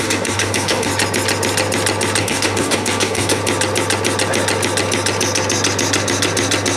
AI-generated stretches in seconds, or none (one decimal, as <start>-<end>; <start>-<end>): 0.0-0.9; 2.2-3.4